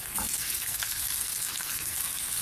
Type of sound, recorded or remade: remade